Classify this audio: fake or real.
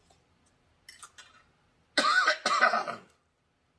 real